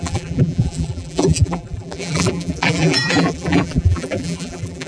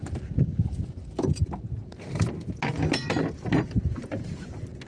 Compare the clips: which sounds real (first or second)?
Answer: second